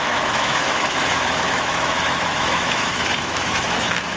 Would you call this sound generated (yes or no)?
yes